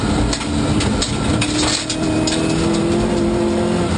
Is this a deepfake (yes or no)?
no